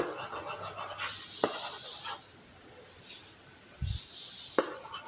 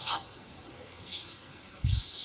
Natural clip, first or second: first